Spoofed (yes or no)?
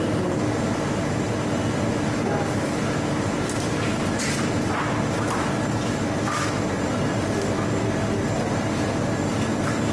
no